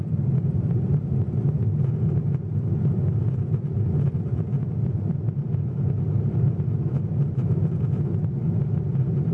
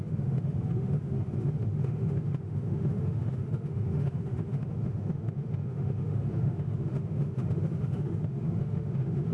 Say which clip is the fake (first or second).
second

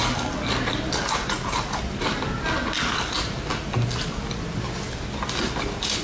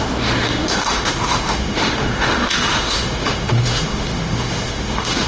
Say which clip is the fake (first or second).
second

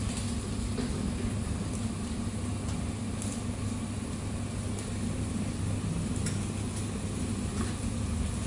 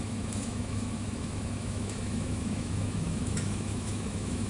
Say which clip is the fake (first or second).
second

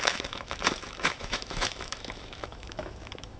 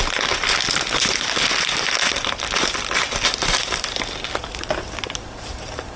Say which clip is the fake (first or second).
first